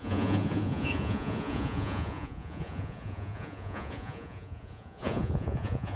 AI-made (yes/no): yes